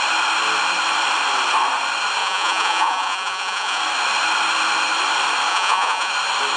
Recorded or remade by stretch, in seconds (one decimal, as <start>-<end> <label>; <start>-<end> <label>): 0.0-2.2 recorded; 2.2-3.8 remade; 3.8-5.5 recorded; 5.5-6.1 remade; 6.1-6.6 recorded